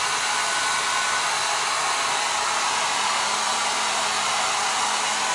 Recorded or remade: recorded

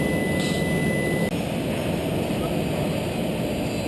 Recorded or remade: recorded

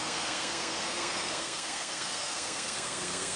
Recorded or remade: remade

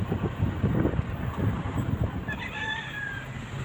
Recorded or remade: recorded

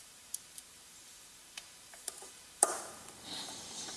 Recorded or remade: remade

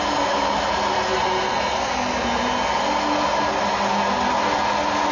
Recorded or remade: recorded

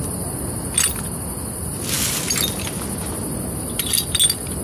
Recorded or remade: recorded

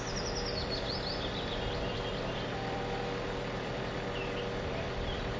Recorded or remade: remade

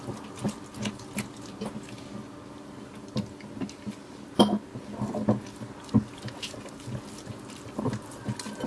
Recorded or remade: recorded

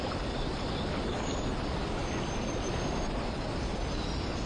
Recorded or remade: recorded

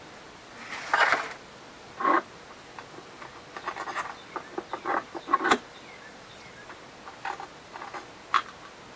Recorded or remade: recorded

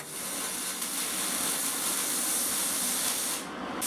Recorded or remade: recorded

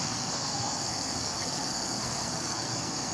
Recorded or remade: remade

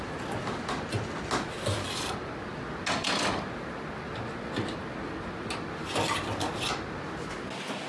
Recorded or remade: recorded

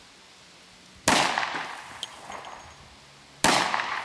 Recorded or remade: recorded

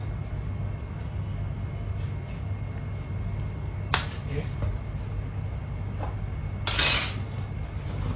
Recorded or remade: recorded